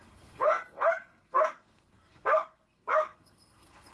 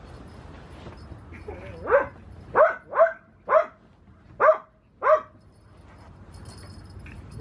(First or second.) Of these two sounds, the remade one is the first